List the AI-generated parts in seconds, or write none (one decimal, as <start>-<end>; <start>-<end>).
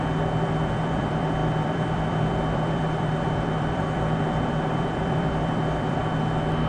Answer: 0.0-6.0